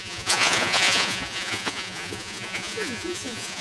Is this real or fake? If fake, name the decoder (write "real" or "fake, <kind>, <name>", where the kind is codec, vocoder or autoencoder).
fake, vocoder, Vocos